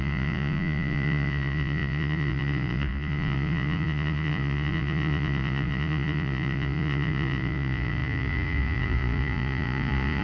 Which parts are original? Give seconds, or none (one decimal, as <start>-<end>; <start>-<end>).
none